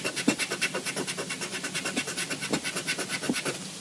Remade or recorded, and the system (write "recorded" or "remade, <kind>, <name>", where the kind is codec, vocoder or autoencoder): recorded